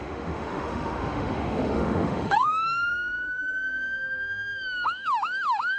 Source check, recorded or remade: remade